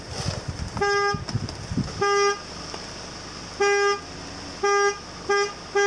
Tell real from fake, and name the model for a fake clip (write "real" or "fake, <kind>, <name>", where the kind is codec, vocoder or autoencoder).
real